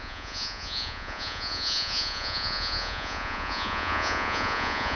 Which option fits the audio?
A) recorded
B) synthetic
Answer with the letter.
B